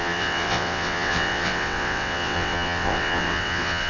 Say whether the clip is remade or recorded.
remade